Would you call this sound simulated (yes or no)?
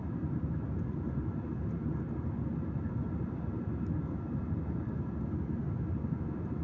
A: no